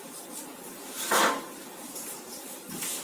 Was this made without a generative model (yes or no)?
yes